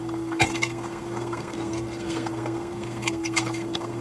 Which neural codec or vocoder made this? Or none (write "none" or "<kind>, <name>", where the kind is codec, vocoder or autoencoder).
codec, SNAC